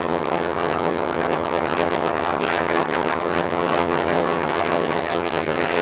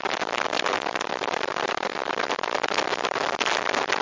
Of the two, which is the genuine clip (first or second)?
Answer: second